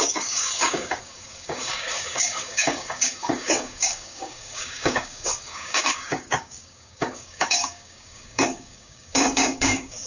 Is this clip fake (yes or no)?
yes